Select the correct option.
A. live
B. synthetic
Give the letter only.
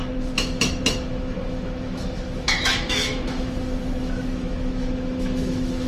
B